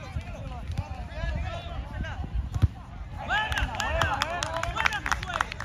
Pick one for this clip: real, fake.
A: real